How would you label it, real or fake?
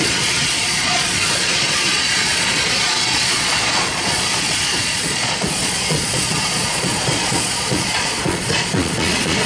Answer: fake